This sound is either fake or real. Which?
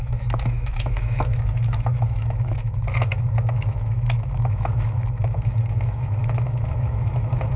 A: fake